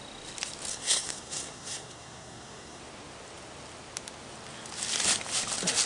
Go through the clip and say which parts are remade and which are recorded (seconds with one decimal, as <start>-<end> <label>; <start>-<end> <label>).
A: 0.0-0.7 recorded; 0.7-2.8 remade; 2.8-5.9 recorded